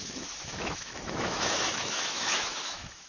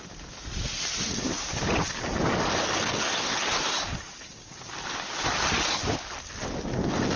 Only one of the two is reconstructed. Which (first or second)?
first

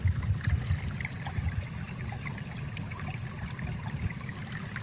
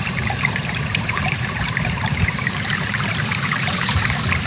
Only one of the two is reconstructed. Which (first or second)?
second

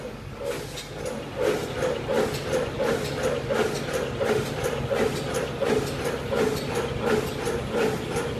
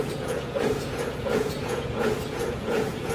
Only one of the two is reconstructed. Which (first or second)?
second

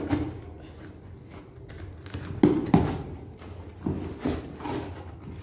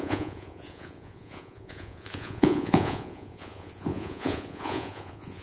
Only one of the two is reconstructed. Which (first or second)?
second